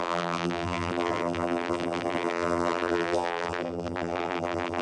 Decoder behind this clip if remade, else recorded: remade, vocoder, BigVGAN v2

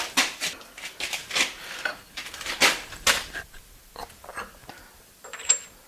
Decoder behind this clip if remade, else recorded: recorded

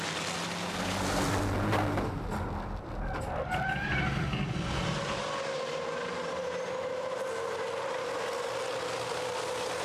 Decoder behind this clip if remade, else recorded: recorded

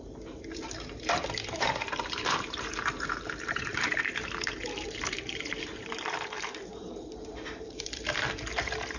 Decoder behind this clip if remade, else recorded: remade, vocoder, BigVGAN v2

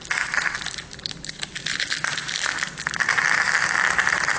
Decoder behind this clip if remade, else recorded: remade, vocoder, BigVGAN v2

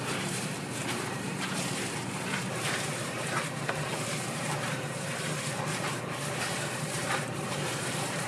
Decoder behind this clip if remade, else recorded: remade, vocoder, BigVGAN v2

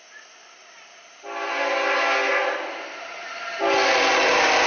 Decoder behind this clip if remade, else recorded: recorded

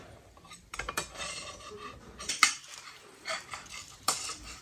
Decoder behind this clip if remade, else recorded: remade, vocoder, BigVGAN v2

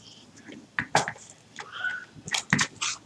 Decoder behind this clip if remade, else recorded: recorded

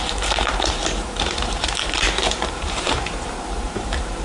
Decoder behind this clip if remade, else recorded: remade, vocoder, BigVGAN v2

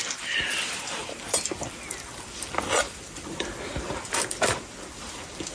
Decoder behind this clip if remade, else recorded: remade, vocoder, BigVGAN v2